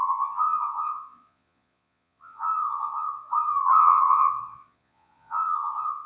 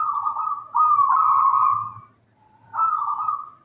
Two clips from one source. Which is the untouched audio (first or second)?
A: second